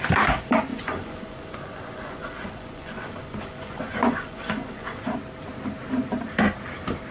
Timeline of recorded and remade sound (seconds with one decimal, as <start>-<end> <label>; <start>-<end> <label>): 0.0-0.7 recorded; 0.7-5.0 remade; 5.0-7.1 recorded